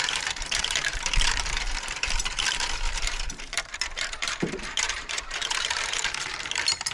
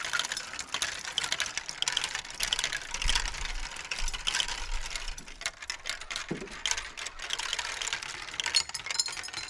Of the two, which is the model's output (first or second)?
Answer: first